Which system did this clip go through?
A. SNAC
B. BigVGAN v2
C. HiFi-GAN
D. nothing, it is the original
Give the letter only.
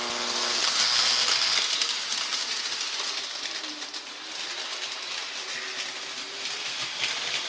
D